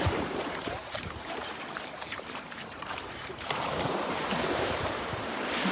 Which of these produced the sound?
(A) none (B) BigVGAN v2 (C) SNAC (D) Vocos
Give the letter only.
B